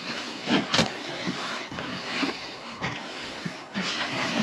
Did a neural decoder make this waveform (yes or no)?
yes